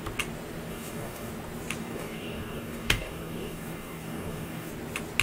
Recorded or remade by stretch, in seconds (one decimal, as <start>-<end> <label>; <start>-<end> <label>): 0.0-0.7 recorded; 0.7-1.3 remade; 1.3-1.8 recorded; 1.8-4.7 remade; 4.7-5.2 recorded